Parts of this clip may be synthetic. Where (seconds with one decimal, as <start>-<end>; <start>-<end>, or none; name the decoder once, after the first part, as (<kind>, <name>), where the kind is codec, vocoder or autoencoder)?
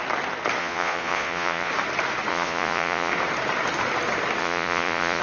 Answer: 0.6-1.7 (vocoder, Vocos); 2.3-3.1; 4.4-5.2